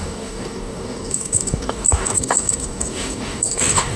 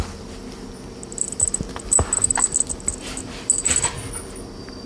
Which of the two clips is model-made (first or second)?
first